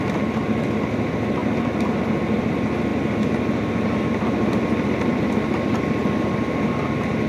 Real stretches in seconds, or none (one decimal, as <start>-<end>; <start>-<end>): 0.0-7.3